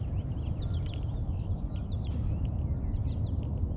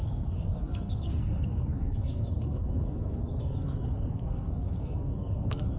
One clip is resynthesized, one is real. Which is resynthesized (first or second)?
second